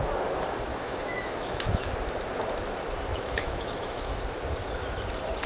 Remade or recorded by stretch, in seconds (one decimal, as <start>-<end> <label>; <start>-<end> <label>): 0.0-0.7 recorded; 0.7-1.9 remade; 1.9-3.1 recorded; 3.1-4.2 remade; 4.2-5.5 recorded

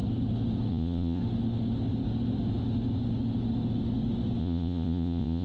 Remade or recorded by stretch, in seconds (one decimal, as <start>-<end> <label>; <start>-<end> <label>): 0.0-0.7 recorded; 0.7-1.2 remade; 1.2-4.4 recorded; 4.4-5.4 remade

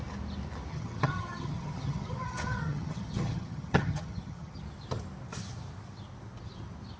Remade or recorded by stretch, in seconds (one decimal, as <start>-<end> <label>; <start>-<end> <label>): 0.0-0.7 recorded; 0.7-4.6 remade; 4.6-7.0 recorded

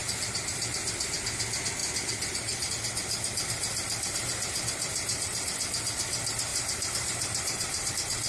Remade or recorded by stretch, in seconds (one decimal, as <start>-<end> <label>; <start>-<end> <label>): 0.0-0.7 remade; 0.7-4.9 recorded; 4.9-5.5 remade; 5.5-6.5 recorded; 6.5-7.9 remade; 7.9-8.3 recorded